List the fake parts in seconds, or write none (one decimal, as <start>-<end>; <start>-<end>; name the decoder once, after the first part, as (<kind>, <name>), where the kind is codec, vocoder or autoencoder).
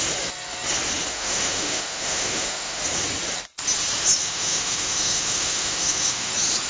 1.1-2.8 (autoencoder, DAC-VAE); 4.2-6.3